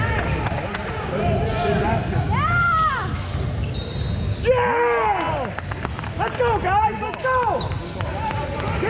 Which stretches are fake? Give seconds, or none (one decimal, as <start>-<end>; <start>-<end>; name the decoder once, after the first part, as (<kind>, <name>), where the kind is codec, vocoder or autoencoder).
none